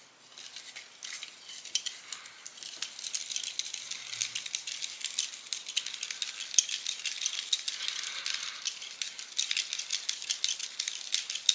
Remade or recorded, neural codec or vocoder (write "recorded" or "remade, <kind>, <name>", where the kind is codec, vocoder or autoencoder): recorded